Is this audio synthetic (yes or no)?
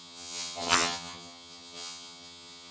yes